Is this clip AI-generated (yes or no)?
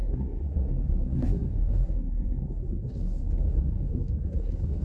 yes